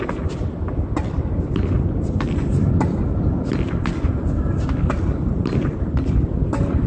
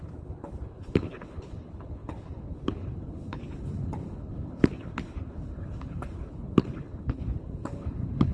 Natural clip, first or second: first